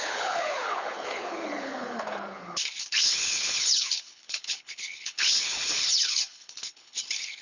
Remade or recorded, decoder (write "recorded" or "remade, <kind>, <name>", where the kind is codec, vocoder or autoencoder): remade, codec, HILCodec